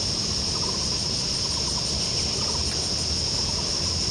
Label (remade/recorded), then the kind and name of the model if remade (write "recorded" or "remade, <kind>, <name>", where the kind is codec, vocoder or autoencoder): recorded